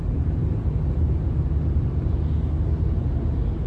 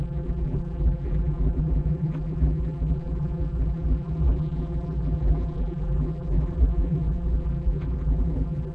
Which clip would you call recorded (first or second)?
first